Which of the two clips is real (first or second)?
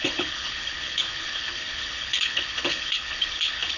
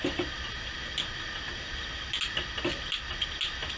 second